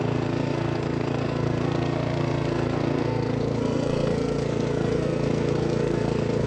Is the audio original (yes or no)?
no